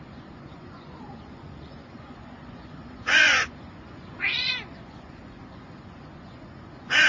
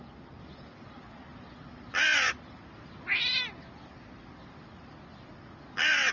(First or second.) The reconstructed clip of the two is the first